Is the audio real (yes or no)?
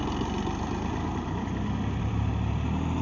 no